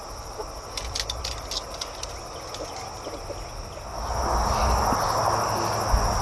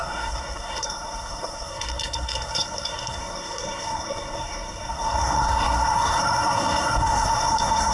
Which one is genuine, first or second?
first